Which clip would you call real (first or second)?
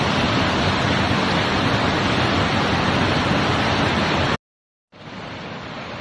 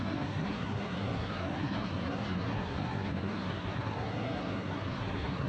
first